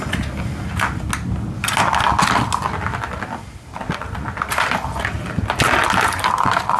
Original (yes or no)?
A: yes